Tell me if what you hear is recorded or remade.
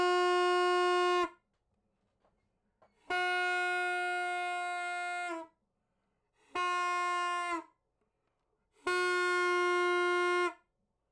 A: recorded